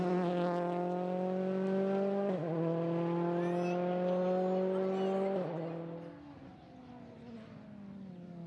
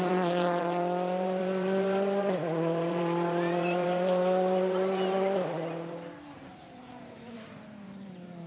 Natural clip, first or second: first